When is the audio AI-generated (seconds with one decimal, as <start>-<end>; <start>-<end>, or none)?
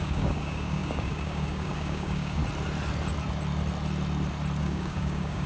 0.0-2.4; 4.6-5.5